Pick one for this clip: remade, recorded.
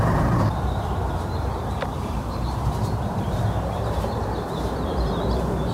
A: remade